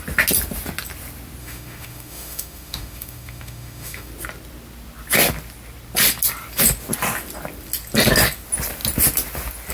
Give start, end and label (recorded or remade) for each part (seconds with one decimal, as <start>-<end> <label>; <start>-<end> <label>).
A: 0.0-1.4 recorded; 1.4-4.1 remade; 4.1-9.7 recorded